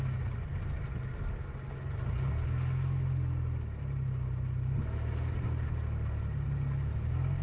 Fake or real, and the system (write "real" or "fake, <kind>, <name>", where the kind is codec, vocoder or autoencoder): real